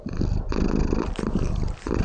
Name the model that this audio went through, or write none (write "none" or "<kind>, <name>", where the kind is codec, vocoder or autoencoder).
vocoder, BigVGAN v2